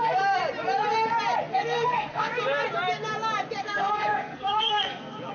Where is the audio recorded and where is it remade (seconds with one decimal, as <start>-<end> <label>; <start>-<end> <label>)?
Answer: 0.0-0.4 remade; 0.4-1.5 recorded; 1.5-2.3 remade; 2.3-3.6 recorded; 3.6-5.3 remade